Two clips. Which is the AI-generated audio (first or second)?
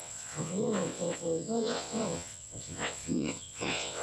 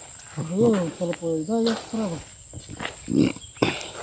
first